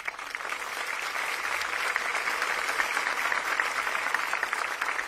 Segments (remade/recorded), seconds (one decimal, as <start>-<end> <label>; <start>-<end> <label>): 0.0-5.1 recorded